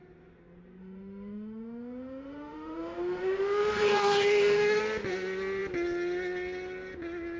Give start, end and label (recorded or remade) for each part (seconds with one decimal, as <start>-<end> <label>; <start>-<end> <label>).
0.0-0.8 recorded; 0.8-4.8 remade; 4.8-7.4 recorded